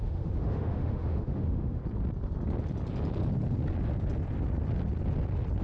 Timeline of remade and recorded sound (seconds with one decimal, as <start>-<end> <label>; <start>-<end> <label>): 0.0-1.8 remade; 1.8-5.6 recorded